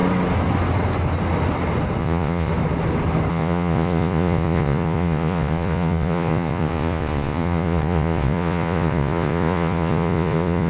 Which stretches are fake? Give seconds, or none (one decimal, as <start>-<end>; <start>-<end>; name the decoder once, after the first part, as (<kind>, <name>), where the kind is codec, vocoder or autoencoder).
2.0-2.5 (vocoder, Vocos); 3.3-10.7